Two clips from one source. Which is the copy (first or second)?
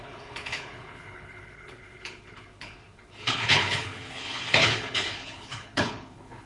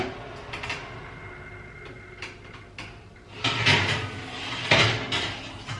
first